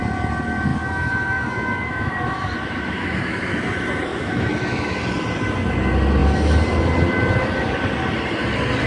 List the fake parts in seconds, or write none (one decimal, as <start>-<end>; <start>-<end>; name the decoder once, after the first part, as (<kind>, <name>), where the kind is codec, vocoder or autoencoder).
0.7-3.5 (autoencoder, DAC-VAE); 4.1-5.0